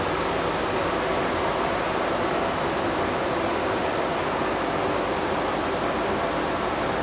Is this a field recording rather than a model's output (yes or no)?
yes